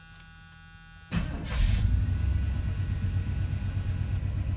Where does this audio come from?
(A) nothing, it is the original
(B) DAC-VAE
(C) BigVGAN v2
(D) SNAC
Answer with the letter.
A